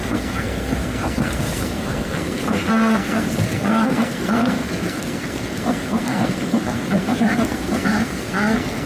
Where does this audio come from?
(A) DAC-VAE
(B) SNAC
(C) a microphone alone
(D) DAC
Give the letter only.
B